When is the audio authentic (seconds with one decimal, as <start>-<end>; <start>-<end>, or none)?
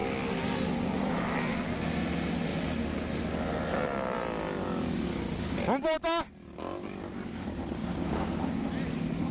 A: 0.0-7.8; 8.5-9.3